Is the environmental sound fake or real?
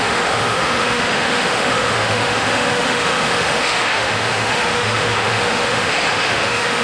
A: fake